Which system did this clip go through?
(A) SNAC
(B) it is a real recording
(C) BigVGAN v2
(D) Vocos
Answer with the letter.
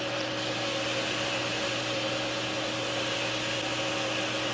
B